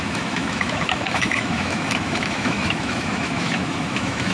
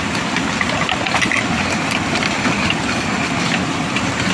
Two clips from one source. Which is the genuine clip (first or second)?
second